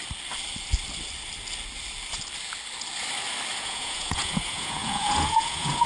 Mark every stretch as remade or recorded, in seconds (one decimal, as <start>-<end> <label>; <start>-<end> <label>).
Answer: 0.0-3.5 recorded; 3.5-5.9 remade